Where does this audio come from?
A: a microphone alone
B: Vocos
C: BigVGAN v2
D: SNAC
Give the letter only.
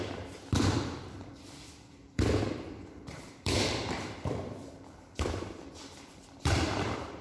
C